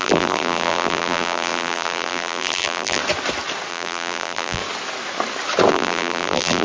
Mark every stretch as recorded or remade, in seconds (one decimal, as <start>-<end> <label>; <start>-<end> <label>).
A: 0.0-3.0 remade; 3.0-3.7 recorded; 3.7-4.6 remade; 4.6-5.7 recorded; 5.7-6.6 remade